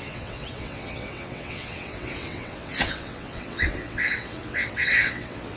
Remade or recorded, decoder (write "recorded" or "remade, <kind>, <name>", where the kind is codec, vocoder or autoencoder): remade, vocoder, WaveNeXt